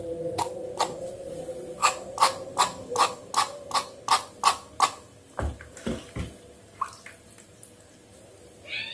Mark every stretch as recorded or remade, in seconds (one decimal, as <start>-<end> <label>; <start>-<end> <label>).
0.0-8.9 recorded